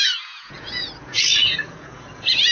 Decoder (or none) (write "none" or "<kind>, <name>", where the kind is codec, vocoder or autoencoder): vocoder, Vocos